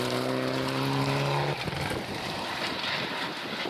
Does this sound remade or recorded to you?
recorded